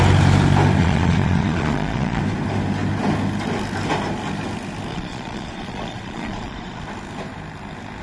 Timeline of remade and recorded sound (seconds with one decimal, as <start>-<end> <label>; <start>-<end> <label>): 0.0-0.8 recorded; 0.8-2.2 remade; 2.2-4.9 recorded; 4.9-6.8 remade; 6.8-8.0 recorded